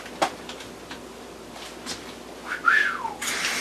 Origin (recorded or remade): recorded